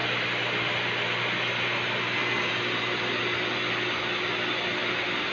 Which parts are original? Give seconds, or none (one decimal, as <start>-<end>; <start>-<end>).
0.0-5.3